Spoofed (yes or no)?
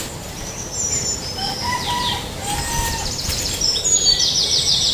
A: yes